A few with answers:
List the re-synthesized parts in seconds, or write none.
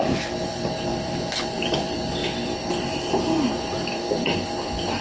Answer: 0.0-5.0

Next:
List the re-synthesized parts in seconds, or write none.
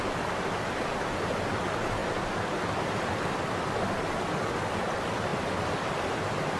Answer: 2.0-3.7; 5.3-6.1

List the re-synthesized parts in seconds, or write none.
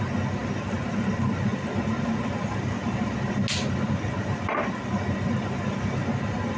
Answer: none